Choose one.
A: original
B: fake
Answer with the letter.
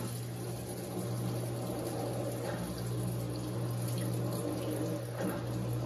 A